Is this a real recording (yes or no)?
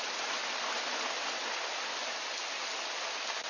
yes